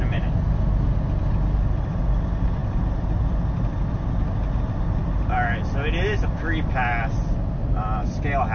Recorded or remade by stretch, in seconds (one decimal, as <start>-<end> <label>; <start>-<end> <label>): 0.0-8.5 recorded